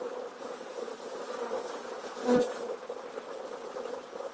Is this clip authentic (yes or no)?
yes